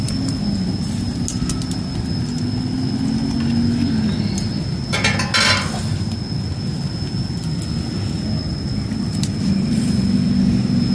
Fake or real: real